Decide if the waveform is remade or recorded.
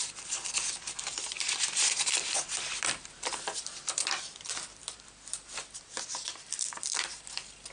remade